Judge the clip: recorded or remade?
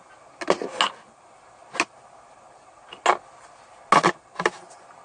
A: recorded